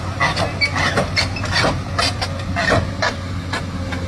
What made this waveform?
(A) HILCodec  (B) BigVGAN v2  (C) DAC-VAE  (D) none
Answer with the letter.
D